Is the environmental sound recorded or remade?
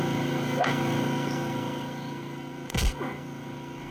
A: remade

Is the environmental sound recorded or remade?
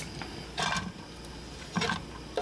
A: remade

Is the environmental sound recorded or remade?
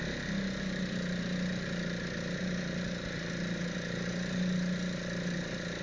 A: recorded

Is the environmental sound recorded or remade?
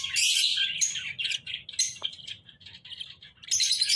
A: recorded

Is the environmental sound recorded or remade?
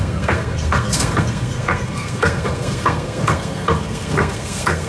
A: remade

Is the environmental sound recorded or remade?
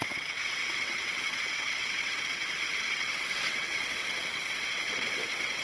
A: remade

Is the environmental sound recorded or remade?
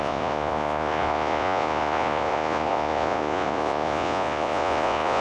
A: remade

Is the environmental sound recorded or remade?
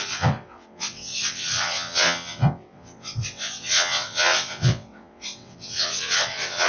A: remade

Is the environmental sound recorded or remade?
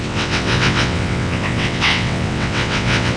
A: remade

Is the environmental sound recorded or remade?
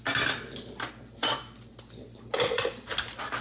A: recorded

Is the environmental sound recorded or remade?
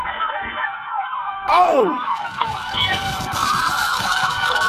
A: remade